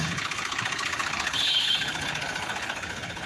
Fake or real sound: fake